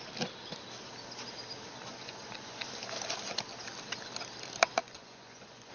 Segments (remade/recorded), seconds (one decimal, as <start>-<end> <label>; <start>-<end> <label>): 0.0-1.9 recorded; 1.9-2.6 remade; 2.6-4.8 recorded; 4.8-5.7 remade